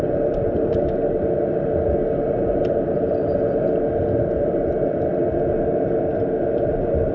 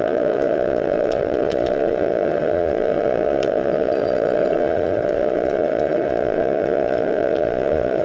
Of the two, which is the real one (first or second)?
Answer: first